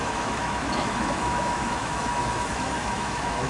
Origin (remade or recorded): remade